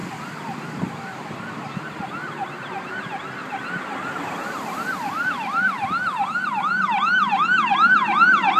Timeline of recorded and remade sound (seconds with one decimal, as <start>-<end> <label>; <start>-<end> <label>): 0.0-2.6 remade; 2.6-3.4 recorded; 3.4-6.6 remade; 6.6-8.6 recorded